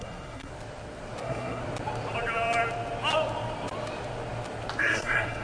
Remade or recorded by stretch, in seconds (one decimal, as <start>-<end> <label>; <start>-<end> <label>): 0.0-0.5 remade; 0.5-1.2 recorded; 1.2-1.6 remade; 1.6-4.8 recorded; 4.8-5.4 remade